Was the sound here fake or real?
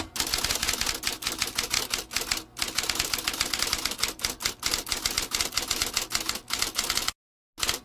real